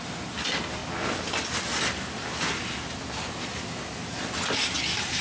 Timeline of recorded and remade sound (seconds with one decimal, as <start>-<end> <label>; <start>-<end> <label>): 0.0-5.2 recorded

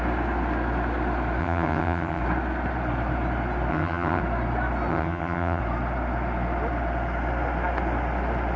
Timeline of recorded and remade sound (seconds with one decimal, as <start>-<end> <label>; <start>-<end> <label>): 0.0-1.4 recorded; 1.4-2.2 remade; 2.2-3.7 recorded; 3.7-4.2 remade; 4.2-4.9 recorded; 4.9-5.6 remade; 5.6-8.6 recorded

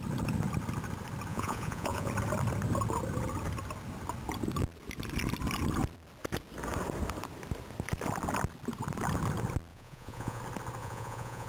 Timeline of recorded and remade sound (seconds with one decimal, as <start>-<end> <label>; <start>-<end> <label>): 0.0-1.3 recorded; 1.3-2.1 remade; 2.1-9.7 recorded; 9.7-10.4 remade; 10.4-10.8 recorded; 10.8-11.5 remade

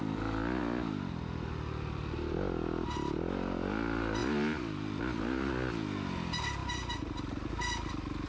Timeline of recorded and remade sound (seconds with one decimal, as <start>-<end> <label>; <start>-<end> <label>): 0.0-8.3 recorded

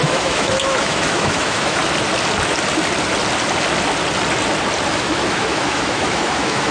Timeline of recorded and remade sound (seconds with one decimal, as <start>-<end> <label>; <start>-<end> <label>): 0.0-1.8 remade; 1.8-4.9 recorded; 4.9-6.7 remade

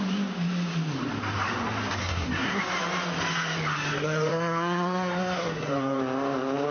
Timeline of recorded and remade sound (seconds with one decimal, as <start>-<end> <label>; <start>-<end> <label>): 0.0-2.0 recorded; 2.0-2.6 remade; 2.6-3.9 recorded; 3.9-6.0 remade; 6.0-6.7 recorded